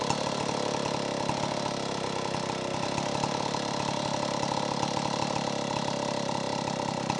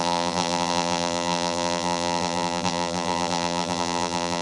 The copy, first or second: second